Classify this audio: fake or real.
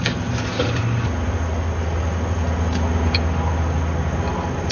real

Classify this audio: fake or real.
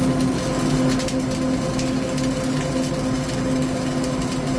real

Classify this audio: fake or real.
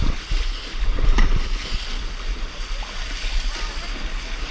real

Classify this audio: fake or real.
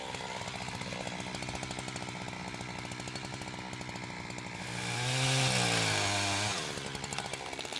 real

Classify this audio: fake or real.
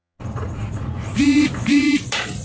fake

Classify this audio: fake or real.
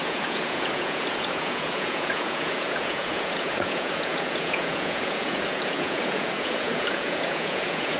fake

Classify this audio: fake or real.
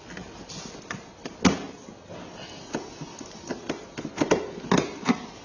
real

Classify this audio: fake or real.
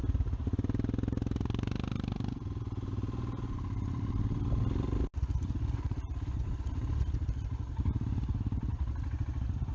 real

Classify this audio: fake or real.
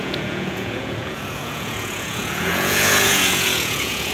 fake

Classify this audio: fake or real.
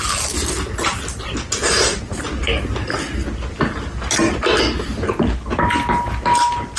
real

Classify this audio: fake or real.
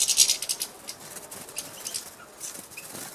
real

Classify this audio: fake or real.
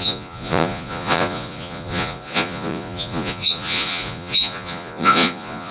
fake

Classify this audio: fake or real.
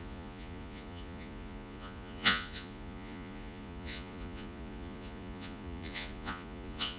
fake